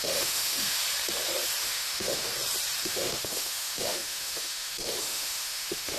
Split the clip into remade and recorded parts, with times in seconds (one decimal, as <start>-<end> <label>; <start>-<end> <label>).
0.0-0.8 remade; 0.8-1.6 recorded; 1.6-2.3 remade; 2.3-2.8 recorded; 2.8-6.0 remade